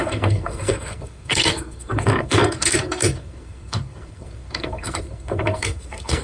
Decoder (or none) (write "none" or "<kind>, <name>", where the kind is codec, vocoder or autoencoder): codec, SNAC